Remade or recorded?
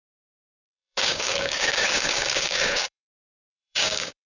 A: remade